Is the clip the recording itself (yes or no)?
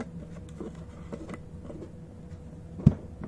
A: yes